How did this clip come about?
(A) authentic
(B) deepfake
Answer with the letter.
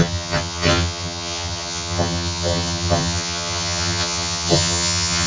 B